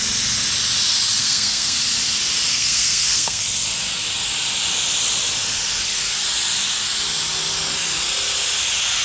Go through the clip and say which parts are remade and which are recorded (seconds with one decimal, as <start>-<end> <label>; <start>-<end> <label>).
0.0-1.2 recorded; 1.2-1.8 remade; 1.8-2.5 recorded; 2.5-3.4 remade; 3.4-9.0 recorded